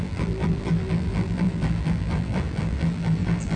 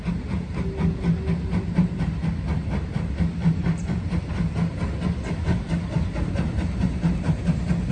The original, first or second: second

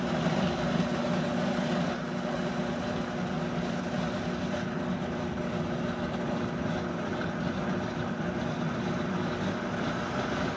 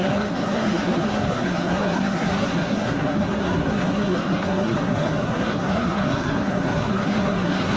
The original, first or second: first